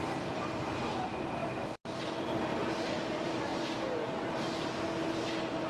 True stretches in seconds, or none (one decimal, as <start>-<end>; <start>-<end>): 0.0-5.7